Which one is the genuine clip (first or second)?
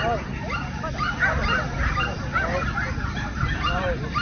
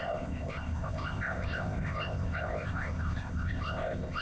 first